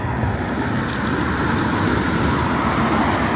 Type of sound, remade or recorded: recorded